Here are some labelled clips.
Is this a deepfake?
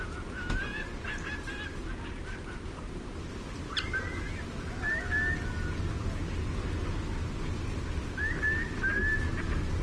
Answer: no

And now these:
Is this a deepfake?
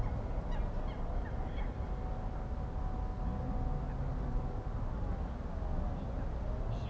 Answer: no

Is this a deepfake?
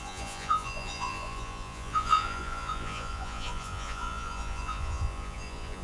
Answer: yes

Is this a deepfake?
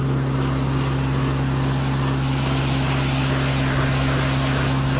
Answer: no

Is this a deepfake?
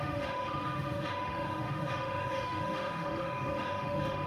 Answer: yes